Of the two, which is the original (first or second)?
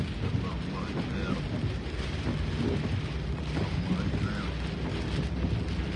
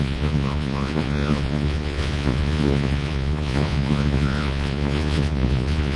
first